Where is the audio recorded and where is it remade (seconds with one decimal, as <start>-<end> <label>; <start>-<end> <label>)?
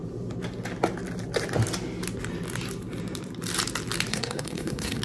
0.0-4.1 recorded; 4.1-5.0 remade